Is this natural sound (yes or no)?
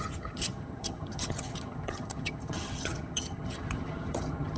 no